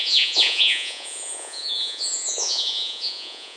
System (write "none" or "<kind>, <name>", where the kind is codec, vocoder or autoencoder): vocoder, Vocos